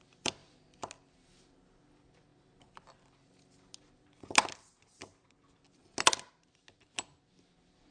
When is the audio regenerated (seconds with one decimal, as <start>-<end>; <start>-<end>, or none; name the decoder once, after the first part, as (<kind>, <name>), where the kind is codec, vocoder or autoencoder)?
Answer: none